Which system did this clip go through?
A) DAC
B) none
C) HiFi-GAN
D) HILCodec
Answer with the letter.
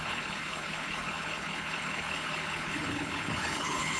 D